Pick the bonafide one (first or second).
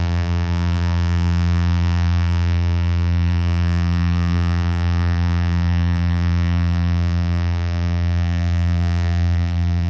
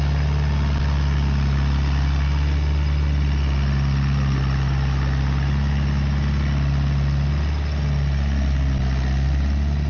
second